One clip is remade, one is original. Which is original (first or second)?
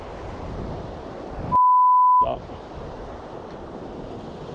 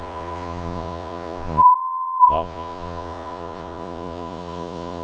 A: first